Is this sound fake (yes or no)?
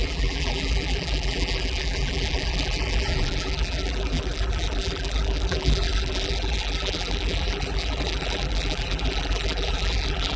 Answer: yes